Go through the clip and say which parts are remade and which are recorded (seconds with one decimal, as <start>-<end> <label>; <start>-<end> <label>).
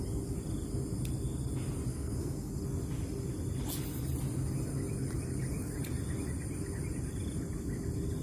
0.0-1.9 recorded; 1.9-2.5 remade; 2.5-8.2 recorded